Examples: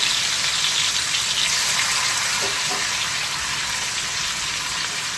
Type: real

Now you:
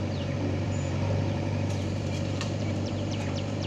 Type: fake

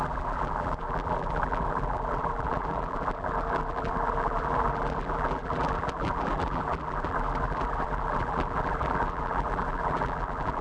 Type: fake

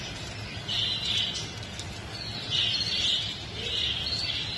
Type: real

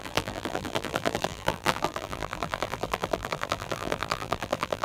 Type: fake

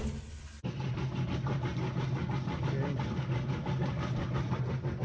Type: real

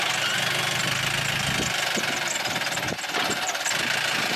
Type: real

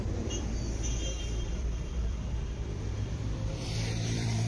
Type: fake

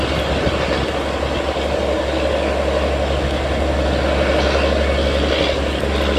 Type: real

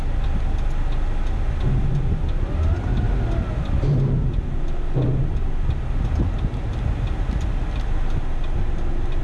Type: real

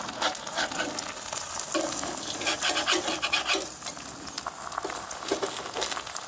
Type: real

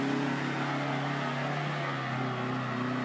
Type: real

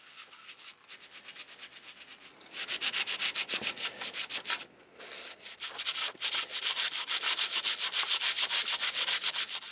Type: real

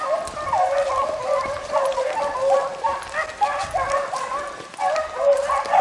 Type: real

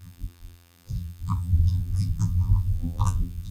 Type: fake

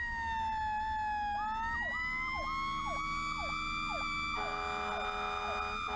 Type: real